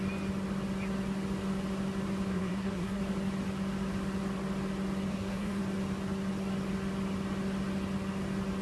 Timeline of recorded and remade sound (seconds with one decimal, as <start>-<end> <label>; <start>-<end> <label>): 0.0-2.3 recorded; 2.3-3.0 remade; 3.0-5.1 recorded; 5.1-5.6 remade; 5.6-8.6 recorded